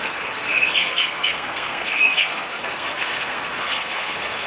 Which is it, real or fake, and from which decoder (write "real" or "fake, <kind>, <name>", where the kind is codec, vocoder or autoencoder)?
fake, codec, SNAC